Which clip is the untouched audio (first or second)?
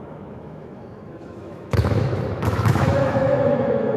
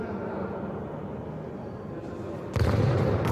second